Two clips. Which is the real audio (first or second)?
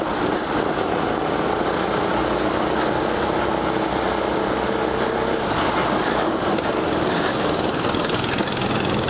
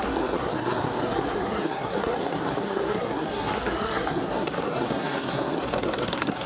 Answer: first